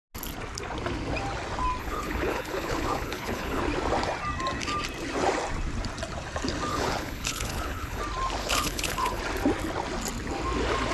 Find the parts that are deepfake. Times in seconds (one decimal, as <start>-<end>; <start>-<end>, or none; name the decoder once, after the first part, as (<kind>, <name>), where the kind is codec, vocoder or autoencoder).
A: 1.8-3.6 (codec, HILCodec); 6.7-8.0; 8.4-9.2